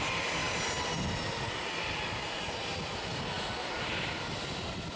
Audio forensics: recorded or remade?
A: recorded